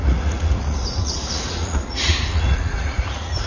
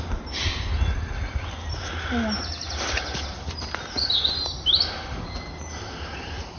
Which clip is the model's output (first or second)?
first